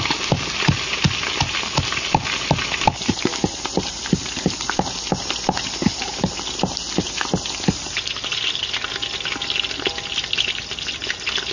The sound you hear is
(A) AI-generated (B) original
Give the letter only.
B